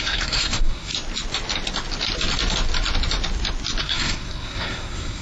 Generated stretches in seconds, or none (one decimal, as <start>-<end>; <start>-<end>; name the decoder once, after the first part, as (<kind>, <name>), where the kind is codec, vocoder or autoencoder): 0.0-0.9 (codec, SNAC); 3.8-5.2